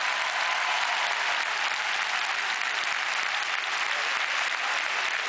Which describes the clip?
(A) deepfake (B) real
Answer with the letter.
B